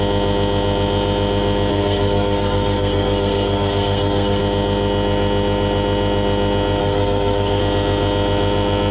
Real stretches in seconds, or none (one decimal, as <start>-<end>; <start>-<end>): 0.0-1.7; 4.4-6.8; 7.6-8.9